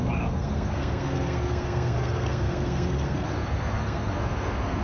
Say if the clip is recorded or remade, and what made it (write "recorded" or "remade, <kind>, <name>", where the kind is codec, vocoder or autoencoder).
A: remade, codec, SNAC